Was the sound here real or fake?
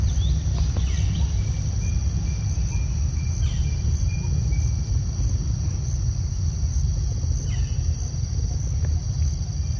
real